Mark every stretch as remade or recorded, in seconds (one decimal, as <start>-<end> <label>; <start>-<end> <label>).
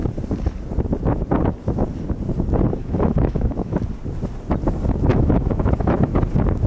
0.0-2.8 recorded; 2.8-3.8 remade; 3.8-5.1 recorded; 5.1-6.2 remade; 6.2-6.7 recorded